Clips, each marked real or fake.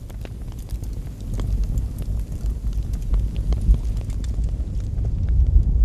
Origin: real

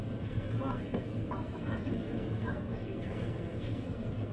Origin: fake